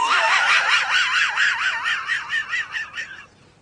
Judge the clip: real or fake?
real